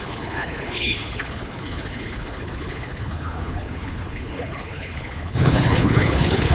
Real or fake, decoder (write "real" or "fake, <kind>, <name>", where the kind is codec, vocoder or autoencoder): fake, codec, HILCodec